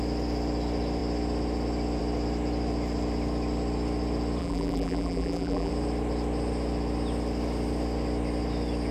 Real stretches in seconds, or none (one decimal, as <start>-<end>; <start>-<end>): 0.0-4.4; 5.7-8.9